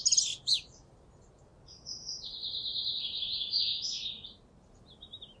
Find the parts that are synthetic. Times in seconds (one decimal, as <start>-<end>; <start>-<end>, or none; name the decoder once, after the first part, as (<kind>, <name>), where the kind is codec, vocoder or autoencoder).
none